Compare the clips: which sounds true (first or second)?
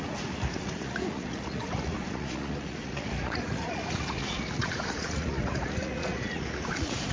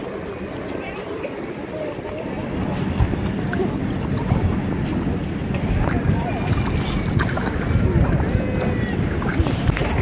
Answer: second